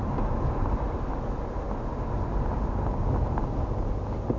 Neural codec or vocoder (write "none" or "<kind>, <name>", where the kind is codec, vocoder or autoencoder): none